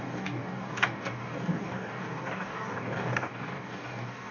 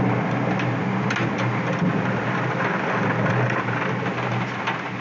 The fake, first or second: first